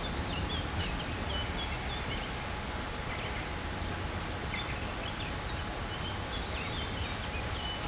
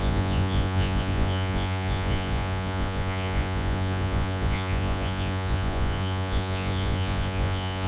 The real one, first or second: first